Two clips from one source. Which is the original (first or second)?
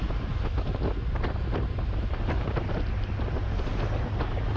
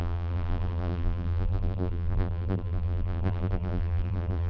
first